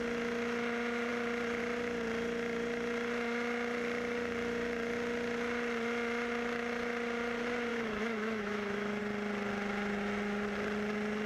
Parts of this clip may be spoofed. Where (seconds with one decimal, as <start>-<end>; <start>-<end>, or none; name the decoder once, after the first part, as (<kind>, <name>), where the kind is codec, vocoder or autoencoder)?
7.7-9.0 (autoencoder, DAC-VAE)